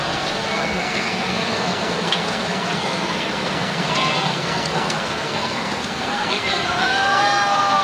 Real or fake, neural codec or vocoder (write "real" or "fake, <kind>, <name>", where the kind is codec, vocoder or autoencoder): fake, codec, SNAC